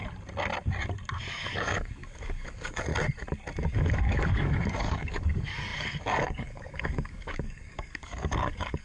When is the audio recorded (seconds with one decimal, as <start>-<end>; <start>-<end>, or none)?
0.0-1.3; 2.9-3.7